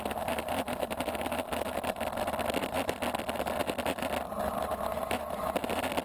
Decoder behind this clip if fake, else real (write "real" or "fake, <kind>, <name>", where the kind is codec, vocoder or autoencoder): real